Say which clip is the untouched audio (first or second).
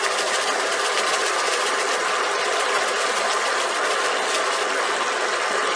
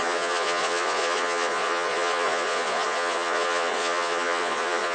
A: first